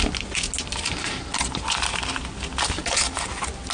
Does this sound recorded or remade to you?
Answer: recorded